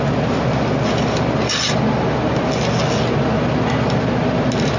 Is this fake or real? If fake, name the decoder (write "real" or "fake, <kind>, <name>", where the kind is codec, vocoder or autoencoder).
real